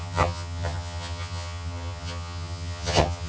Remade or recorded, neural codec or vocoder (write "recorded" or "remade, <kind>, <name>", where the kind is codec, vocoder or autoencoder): remade, vocoder, HiFi-GAN